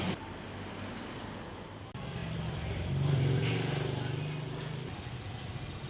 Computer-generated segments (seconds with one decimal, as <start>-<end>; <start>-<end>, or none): 2.2-2.9